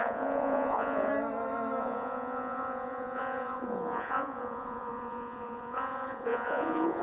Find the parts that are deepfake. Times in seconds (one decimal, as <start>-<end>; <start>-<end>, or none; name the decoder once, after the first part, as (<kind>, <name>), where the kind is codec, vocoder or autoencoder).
0.0-1.1 (vocoder, Vocos); 1.8-7.0